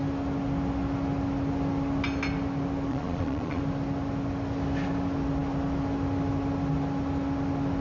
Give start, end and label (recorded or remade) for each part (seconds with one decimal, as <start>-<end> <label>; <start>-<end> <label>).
0.0-2.9 recorded; 2.9-3.6 remade; 3.6-7.8 recorded